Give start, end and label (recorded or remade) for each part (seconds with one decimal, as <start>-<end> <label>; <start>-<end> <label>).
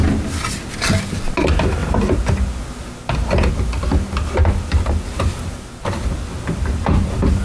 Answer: 0.0-7.4 recorded